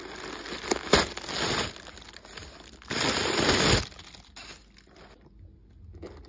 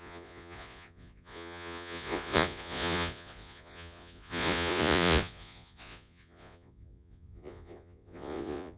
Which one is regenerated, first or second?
second